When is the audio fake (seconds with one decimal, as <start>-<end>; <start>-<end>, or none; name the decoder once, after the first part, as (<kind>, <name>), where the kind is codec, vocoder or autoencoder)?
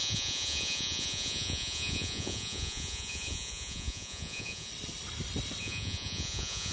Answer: 0.0-4.7 (vocoder, Vocos); 5.6-6.7